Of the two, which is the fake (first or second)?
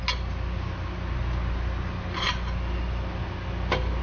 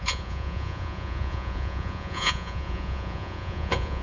second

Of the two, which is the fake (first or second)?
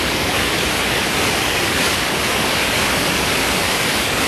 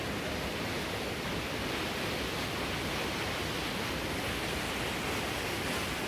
first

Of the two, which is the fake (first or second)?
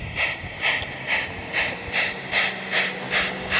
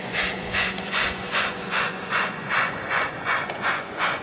second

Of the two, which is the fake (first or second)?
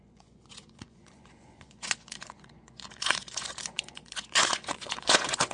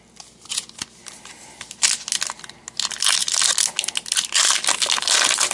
first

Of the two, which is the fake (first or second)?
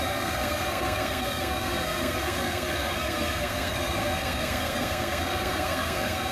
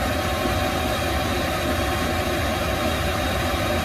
first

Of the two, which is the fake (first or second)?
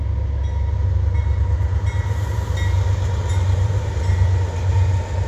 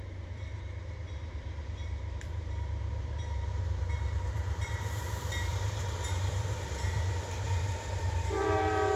second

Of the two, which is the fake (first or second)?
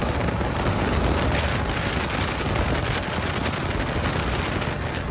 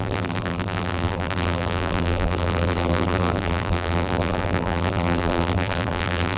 second